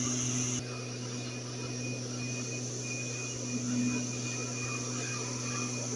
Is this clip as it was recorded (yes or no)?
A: yes